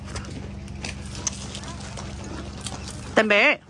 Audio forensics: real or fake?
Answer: real